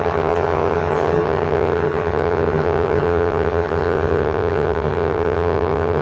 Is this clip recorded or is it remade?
remade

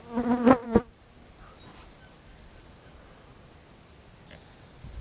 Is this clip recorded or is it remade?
recorded